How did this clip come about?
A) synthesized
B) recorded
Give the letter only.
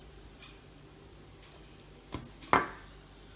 B